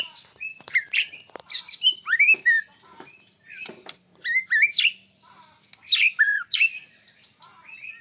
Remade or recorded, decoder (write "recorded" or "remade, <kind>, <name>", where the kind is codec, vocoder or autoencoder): recorded